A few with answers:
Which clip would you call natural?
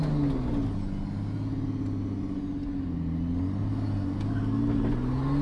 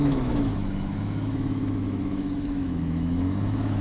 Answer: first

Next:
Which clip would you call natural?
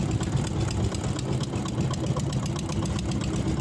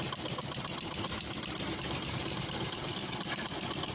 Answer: first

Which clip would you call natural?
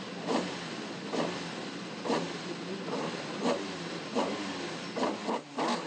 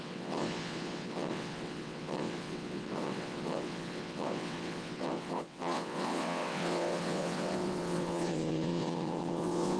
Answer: first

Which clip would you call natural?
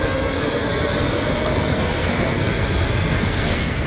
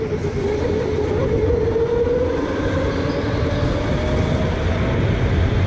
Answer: second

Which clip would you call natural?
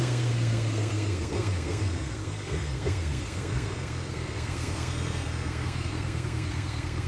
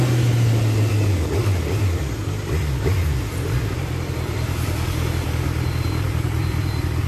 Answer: second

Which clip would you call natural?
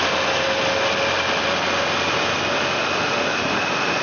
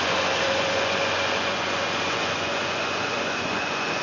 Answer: first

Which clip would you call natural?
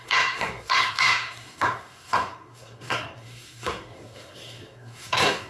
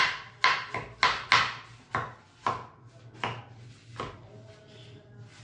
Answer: second